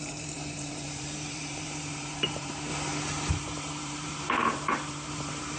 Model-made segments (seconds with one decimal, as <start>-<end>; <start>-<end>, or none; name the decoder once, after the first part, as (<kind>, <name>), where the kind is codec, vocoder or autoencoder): 0.0-2.7 (vocoder, BigVGAN v2); 3.3-5.6